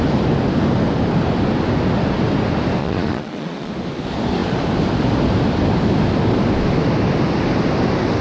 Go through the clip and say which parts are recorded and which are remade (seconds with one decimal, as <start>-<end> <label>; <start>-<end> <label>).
0.0-2.8 recorded; 2.8-3.7 remade; 3.7-8.2 recorded